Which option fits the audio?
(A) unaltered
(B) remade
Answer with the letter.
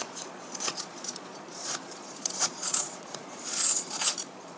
B